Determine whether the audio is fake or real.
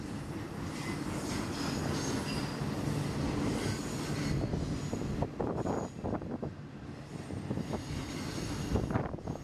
real